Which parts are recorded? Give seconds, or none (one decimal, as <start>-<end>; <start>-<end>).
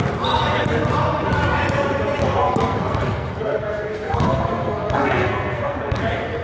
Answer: 0.0-2.2; 6.0-6.4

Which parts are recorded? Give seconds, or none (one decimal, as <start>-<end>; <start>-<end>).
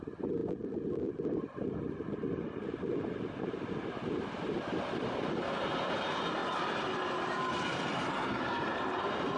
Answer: none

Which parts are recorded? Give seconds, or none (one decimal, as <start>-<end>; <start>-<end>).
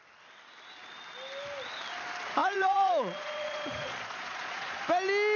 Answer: 0.0-2.4; 4.8-5.4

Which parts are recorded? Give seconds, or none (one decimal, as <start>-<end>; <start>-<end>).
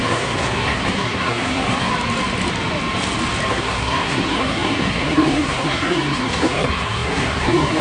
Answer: 1.9-3.5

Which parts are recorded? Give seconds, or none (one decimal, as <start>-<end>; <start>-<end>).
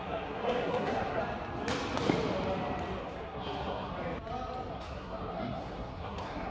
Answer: 1.2-3.0; 3.9-4.7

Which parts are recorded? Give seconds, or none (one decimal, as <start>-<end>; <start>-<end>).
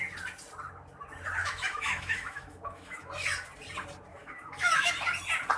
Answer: 0.0-1.4; 3.1-4.1; 4.9-5.6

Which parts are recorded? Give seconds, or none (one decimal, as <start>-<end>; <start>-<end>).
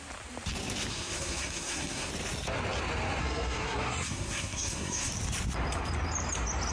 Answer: 0.0-0.9; 2.1-3.2; 5.1-6.7